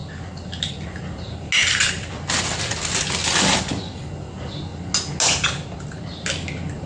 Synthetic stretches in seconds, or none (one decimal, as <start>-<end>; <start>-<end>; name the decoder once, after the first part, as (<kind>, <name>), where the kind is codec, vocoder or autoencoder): none